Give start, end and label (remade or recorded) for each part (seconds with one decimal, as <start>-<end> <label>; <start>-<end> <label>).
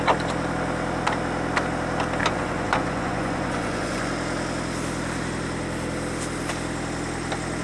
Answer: 0.0-2.2 recorded; 2.2-4.1 remade; 4.1-7.6 recorded